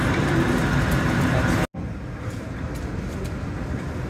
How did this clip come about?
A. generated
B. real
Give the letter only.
B